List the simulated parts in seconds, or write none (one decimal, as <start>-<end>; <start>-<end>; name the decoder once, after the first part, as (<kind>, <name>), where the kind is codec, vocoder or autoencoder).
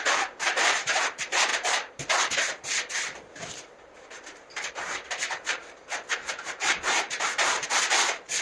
0.0-8.4 (vocoder, BigVGAN v2)